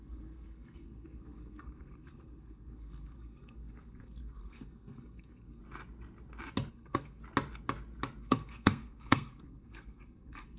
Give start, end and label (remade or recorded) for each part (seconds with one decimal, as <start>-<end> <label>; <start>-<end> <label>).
0.0-5.6 remade; 5.6-6.7 recorded; 6.7-7.2 remade; 7.2-8.2 recorded; 8.2-10.6 remade